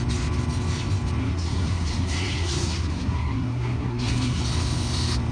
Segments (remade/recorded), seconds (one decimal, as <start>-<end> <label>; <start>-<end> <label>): 0.0-1.2 recorded; 1.2-4.4 remade; 4.4-5.3 recorded